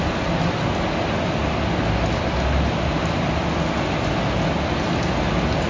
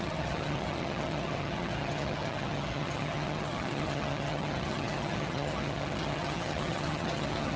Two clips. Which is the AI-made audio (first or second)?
second